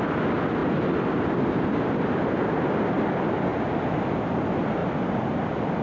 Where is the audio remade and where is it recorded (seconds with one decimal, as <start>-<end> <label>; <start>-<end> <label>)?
0.0-4.8 recorded; 4.8-5.8 remade